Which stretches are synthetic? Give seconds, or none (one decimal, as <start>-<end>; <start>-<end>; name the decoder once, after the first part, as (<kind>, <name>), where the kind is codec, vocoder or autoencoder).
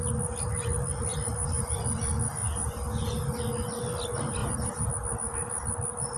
1.1-1.7 (vocoder, BigVGAN v2); 2.4-3.4; 4.4-4.9